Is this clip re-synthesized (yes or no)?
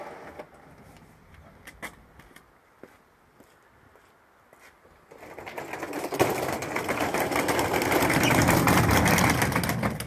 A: no